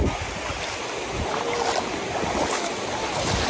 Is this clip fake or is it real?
real